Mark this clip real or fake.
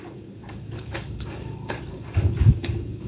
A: fake